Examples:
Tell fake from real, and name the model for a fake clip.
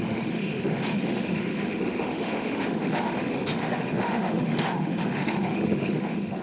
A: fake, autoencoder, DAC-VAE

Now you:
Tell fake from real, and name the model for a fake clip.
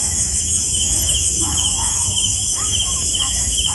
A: fake, autoencoder, DAC-VAE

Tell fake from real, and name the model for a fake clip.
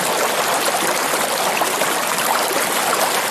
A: real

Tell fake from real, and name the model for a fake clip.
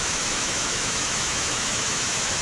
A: fake, autoencoder, DAC-VAE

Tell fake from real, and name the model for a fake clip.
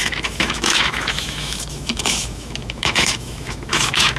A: fake, autoencoder, DAC-VAE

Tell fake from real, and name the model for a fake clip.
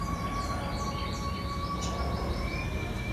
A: real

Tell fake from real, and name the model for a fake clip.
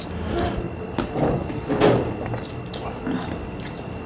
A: real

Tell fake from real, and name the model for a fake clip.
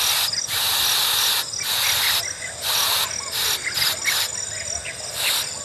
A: real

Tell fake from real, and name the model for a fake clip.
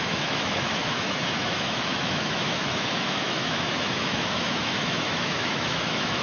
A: fake, autoencoder, DAC-VAE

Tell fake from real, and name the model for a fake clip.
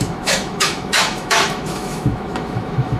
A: fake, autoencoder, DAC-VAE